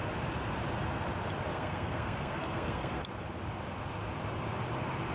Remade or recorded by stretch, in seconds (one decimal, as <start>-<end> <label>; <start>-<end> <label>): 0.0-1.5 recorded; 1.5-3.0 remade; 3.0-5.1 recorded